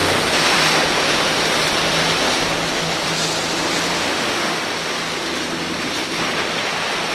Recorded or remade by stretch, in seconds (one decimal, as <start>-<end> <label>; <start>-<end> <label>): 0.0-4.1 recorded; 4.1-4.6 remade; 4.6-7.1 recorded